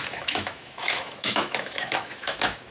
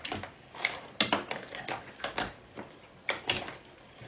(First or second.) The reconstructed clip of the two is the first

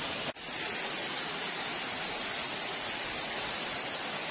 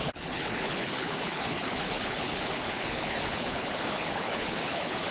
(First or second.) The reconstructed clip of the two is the second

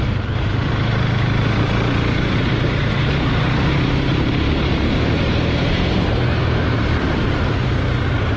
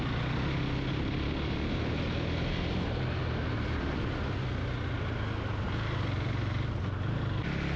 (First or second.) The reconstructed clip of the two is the first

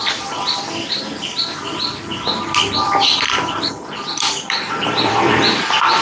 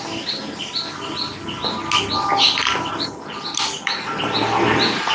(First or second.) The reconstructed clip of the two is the first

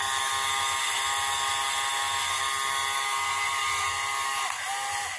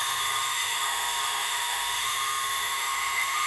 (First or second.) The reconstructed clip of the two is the second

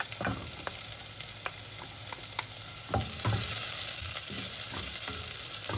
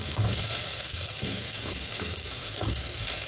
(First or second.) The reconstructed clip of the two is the second